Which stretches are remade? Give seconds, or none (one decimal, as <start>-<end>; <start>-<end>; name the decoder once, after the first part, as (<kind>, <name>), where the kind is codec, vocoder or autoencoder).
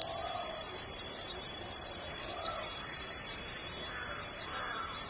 0.0-3.1 (vocoder, BigVGAN v2)